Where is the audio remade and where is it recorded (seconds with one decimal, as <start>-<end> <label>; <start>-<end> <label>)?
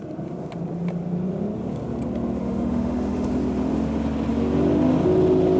0.0-2.4 recorded; 2.4-3.3 remade; 3.3-5.6 recorded